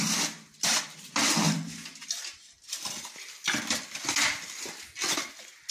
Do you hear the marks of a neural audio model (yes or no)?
no